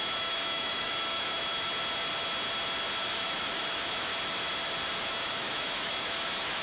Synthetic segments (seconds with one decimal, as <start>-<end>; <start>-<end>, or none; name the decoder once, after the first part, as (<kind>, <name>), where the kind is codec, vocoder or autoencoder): 0.0-1.5 (autoencoder, DAC-VAE); 3.0-4.1; 5.0-6.6